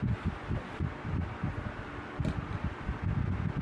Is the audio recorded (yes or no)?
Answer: yes